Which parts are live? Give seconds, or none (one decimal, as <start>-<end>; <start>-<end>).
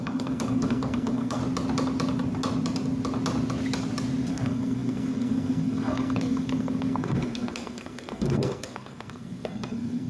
1.4-4.3